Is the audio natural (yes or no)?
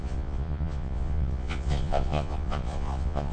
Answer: no